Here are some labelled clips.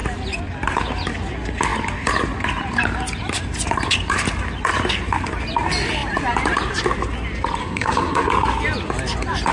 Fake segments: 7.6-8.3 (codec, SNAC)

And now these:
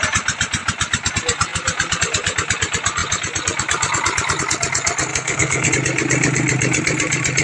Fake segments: 5.1-5.7 (codec, SNAC)